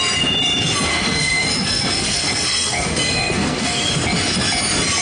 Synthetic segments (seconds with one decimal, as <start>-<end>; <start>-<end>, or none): 0.9-3.9